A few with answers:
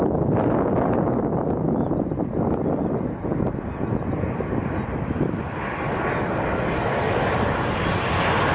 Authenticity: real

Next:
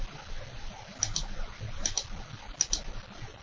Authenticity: real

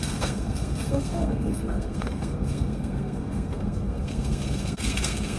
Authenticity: fake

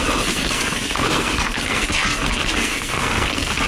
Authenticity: fake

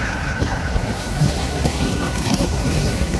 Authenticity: fake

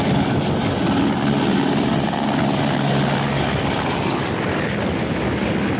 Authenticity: real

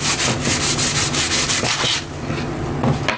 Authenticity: real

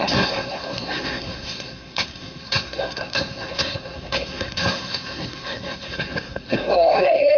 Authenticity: fake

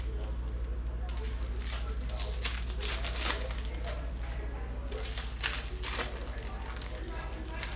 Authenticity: real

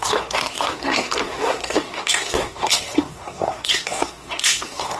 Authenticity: fake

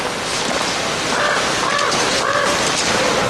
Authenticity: real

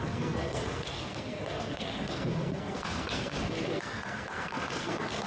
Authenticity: fake